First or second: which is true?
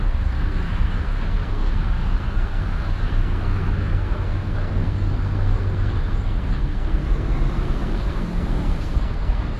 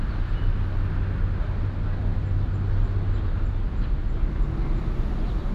second